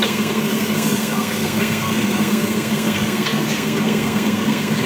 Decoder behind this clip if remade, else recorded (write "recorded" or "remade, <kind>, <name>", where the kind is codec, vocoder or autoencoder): remade, codec, SNAC